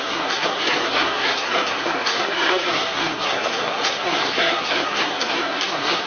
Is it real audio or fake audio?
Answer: fake